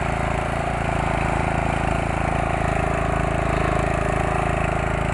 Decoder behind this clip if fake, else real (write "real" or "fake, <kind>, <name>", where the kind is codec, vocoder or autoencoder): real